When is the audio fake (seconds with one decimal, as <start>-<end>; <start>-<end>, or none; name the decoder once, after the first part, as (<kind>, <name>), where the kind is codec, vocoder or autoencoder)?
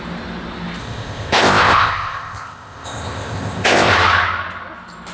0.8-3.9 (codec, ZipCodec)